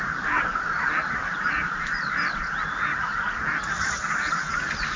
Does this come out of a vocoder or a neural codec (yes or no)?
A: no